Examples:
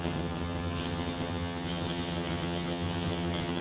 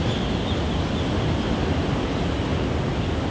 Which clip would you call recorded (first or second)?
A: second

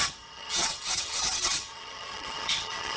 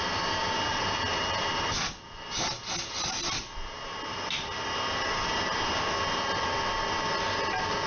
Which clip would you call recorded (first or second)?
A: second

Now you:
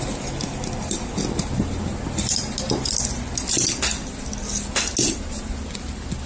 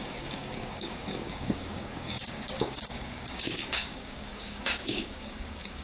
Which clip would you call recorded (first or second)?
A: first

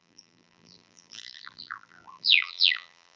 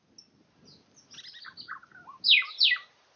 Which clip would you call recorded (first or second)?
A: second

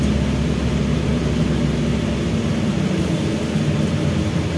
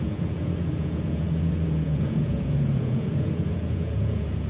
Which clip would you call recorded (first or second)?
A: first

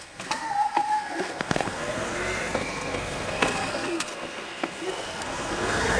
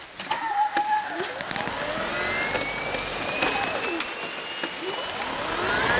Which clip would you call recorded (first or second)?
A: second